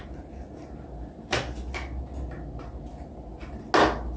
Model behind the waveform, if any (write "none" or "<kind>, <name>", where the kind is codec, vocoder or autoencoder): none